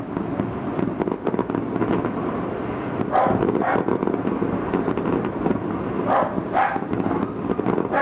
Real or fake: real